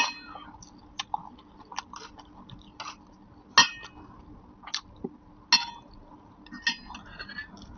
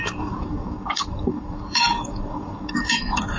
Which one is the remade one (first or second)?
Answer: second